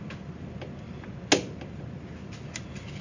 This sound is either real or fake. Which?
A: real